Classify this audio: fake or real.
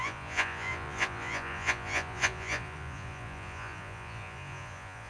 fake